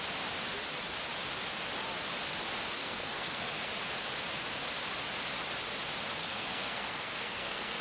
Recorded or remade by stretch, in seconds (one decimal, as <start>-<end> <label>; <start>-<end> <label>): 0.0-2.8 recorded; 2.8-3.7 remade; 3.7-6.2 recorded; 6.2-7.8 remade